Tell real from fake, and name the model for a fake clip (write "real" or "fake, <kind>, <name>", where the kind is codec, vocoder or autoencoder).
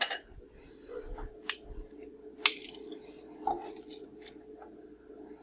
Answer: real